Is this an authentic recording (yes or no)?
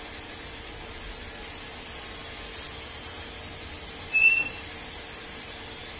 yes